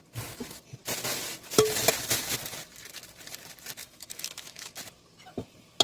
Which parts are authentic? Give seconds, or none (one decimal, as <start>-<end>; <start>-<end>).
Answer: 0.0-3.8; 4.7-5.8